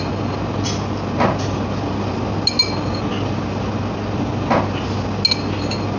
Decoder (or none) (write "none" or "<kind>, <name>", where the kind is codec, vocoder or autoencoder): none